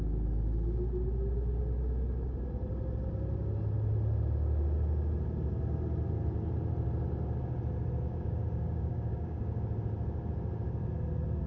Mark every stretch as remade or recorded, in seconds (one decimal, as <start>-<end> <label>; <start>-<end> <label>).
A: 0.0-8.1 recorded; 8.1-9.4 remade; 9.4-11.5 recorded